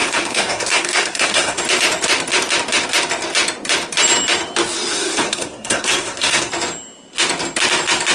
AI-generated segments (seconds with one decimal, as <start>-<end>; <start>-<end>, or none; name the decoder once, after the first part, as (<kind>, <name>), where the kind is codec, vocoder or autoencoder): 0.0-1.6 (codec, SNAC); 4.9-6.5